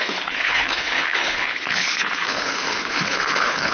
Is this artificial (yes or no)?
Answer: yes